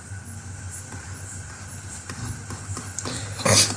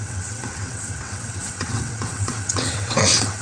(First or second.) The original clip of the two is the first